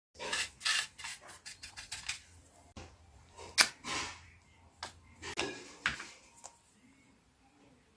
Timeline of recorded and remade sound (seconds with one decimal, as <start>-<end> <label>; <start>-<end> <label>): 0.0-1.1 recorded; 1.1-1.9 remade; 1.9-8.0 recorded